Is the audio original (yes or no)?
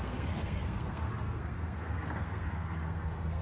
no